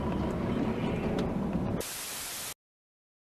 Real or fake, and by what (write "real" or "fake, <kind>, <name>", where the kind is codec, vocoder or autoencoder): real